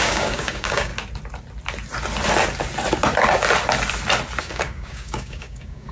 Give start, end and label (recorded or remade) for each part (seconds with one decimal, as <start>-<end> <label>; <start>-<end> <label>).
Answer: 0.0-0.9 remade; 0.9-4.4 recorded; 4.4-5.9 remade